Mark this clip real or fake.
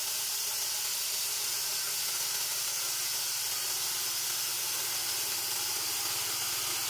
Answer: real